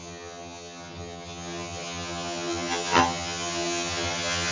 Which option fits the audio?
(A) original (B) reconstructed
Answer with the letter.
B